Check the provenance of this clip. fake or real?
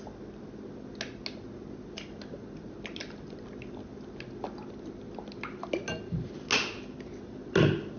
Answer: real